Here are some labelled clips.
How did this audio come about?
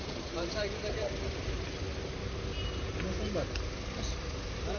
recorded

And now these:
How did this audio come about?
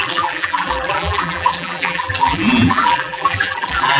remade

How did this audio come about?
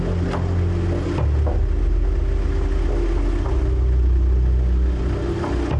recorded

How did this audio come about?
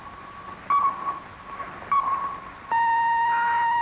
recorded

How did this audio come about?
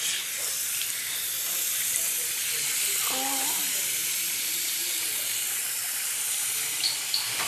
recorded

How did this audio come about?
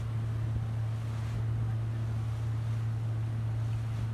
recorded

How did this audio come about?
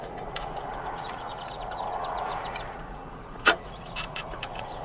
remade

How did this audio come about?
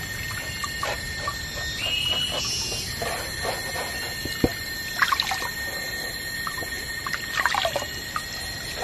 recorded